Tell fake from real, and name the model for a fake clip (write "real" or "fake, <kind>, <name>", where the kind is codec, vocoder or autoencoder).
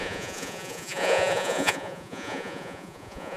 fake, vocoder, Vocos